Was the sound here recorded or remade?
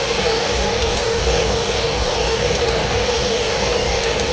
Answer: remade